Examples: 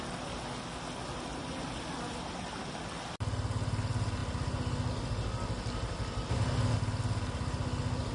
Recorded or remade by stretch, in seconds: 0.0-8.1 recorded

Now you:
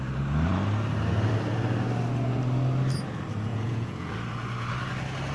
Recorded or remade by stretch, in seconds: 0.0-3.5 recorded; 3.5-4.1 remade; 4.1-5.3 recorded

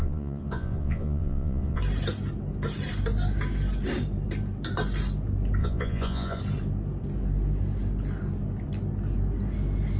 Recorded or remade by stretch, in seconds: 0.0-1.8 remade; 1.8-5.6 recorded; 5.6-6.4 remade; 6.4-10.0 recorded

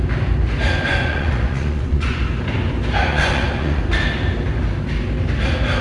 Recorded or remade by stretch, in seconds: 0.0-0.9 recorded; 0.9-2.2 remade; 2.2-3.0 recorded; 3.0-3.8 remade; 3.8-5.8 recorded